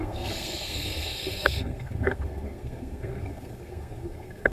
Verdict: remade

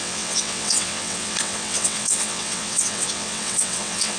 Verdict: remade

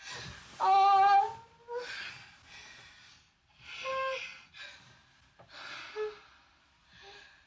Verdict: recorded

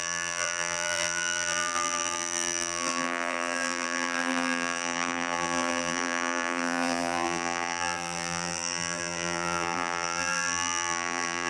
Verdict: remade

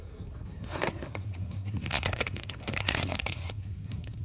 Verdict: remade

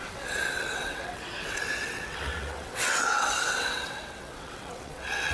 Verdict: remade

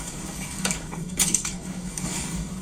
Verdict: remade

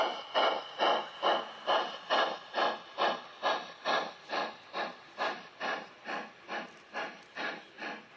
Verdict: recorded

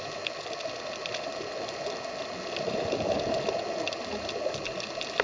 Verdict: recorded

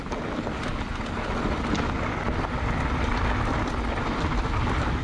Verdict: recorded